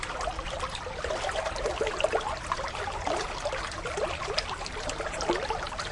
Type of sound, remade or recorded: recorded